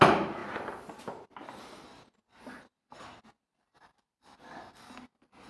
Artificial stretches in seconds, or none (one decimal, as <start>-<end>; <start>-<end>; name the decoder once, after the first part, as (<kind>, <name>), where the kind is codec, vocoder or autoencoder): none